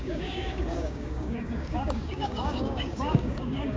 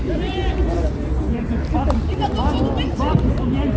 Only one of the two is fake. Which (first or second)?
first